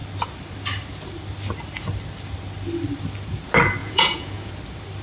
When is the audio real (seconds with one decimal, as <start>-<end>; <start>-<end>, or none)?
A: 0.0-3.8; 4.5-5.0